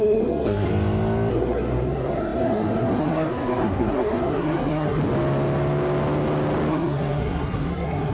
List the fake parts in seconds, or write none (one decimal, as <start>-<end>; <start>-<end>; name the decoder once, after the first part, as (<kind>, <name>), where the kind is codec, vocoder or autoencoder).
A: 0.0-0.7 (codec, SNAC); 1.3-5.0; 6.7-8.1